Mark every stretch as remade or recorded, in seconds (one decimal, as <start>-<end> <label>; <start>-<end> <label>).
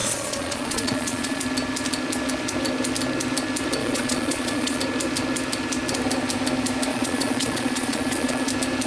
0.0-1.4 remade; 1.4-3.8 recorded; 3.8-4.8 remade; 4.8-6.9 recorded; 6.9-8.5 remade; 8.5-8.9 recorded